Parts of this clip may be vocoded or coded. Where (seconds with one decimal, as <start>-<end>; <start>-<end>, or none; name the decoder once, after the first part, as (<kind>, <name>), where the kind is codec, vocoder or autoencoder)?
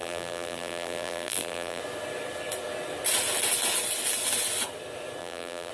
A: 0.0-1.8 (vocoder, BigVGAN v2); 5.2-5.7